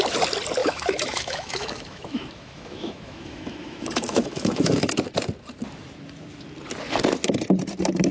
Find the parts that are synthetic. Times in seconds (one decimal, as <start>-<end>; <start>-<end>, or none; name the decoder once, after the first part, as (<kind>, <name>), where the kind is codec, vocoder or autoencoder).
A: 0.6-4.9 (autoencoder, DAC-VAE)